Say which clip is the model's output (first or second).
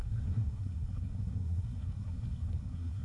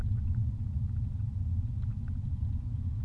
first